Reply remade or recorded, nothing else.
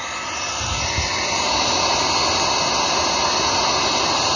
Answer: recorded